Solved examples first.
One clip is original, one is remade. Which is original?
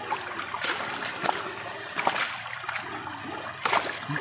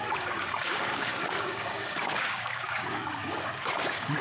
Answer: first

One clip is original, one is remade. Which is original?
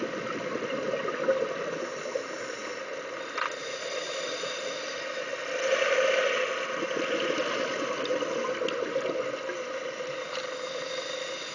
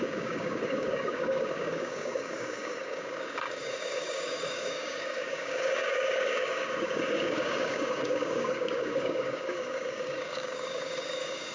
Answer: first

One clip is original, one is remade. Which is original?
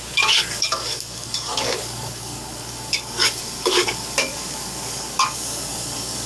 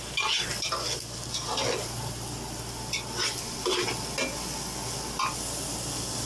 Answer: second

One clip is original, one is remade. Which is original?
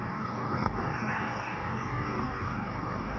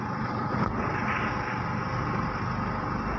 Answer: second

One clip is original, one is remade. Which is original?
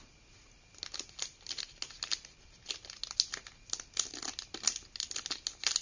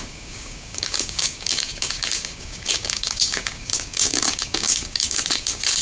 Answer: first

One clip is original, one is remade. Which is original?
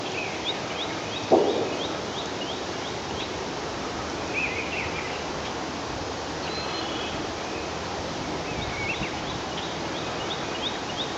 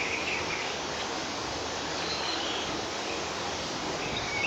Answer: first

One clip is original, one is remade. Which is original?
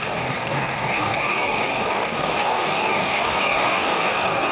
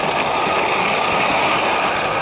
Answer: second